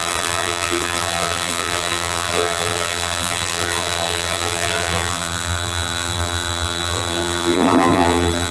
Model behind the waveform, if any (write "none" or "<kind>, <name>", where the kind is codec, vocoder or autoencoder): vocoder, BigVGAN v2